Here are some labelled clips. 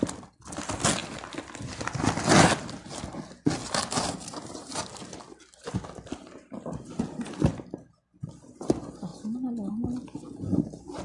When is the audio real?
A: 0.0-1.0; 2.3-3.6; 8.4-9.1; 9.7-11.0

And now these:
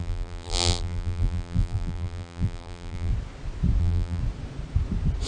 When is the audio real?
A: 3.1-3.8; 4.2-5.3

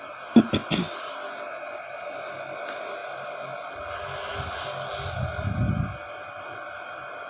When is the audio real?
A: 0.0-7.3

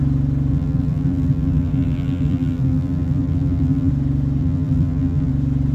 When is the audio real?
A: 0.0-0.5; 3.9-4.4; 5.3-5.7

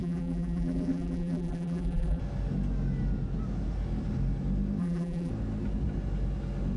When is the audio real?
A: 2.2-4.8; 5.3-6.8

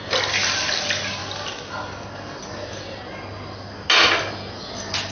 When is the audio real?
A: 0.0-5.1

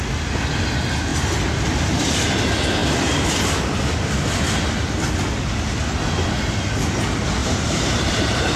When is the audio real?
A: 0.0-7.4

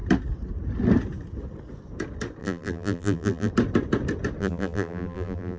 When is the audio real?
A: 0.0-2.4; 3.5-4.4